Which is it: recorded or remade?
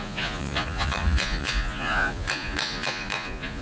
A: remade